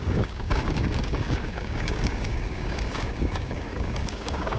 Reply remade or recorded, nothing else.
remade